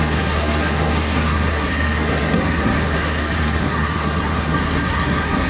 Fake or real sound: fake